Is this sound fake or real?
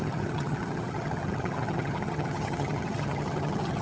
fake